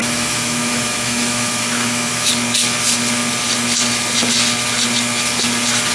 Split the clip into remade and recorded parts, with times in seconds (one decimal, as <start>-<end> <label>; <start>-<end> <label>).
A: 0.0-2.3 remade; 2.3-5.9 recorded